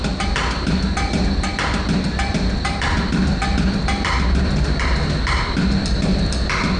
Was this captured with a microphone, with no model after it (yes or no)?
yes